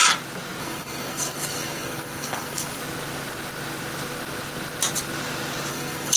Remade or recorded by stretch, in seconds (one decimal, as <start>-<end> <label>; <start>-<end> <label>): 0.0-0.6 recorded; 0.6-2.8 remade; 2.8-5.7 recorded; 5.7-6.2 remade